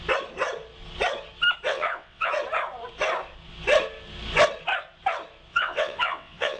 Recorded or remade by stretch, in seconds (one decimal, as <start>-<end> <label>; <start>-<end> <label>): 0.0-1.7 recorded; 1.7-2.3 remade; 2.3-5.5 recorded; 5.5-6.6 remade